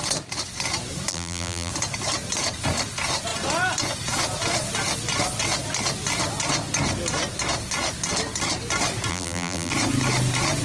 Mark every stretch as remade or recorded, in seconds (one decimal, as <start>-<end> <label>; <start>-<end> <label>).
0.0-1.1 recorded; 1.1-1.7 remade; 1.7-9.1 recorded; 9.1-9.7 remade; 9.7-10.6 recorded